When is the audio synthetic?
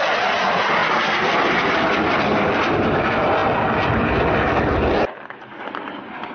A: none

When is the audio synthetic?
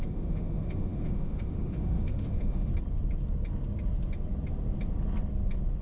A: 0.0-2.7 (autoencoder, DAC-VAE)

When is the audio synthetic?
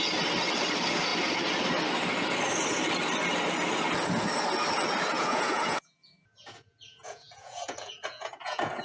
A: 5.1-8.8 (vocoder, Vocos)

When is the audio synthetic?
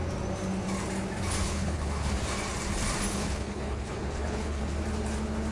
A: 1.4-2.1 (codec, HILCodec); 3.1-4.6